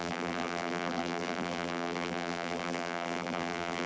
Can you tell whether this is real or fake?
fake